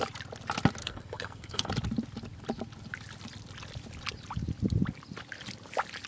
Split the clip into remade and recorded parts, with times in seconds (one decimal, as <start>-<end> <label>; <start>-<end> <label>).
0.0-0.8 recorded; 0.8-1.7 remade; 1.7-6.1 recorded